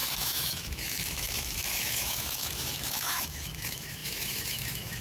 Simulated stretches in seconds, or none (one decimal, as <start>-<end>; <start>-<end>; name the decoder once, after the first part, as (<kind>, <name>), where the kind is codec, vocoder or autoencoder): 0.0-5.0 (autoencoder, DAC-VAE)